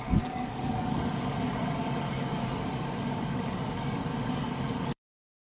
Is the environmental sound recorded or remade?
remade